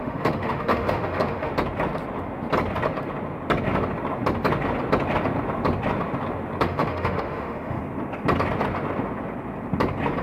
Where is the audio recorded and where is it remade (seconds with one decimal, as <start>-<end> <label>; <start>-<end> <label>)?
0.0-1.5 remade; 1.5-6.6 recorded; 6.6-7.8 remade; 7.8-10.2 recorded